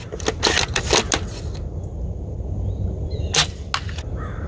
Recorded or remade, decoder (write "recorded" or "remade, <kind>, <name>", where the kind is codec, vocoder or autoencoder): recorded